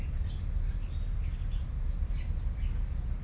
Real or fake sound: real